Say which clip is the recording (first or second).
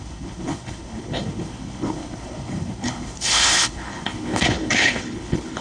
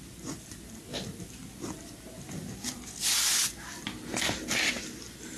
second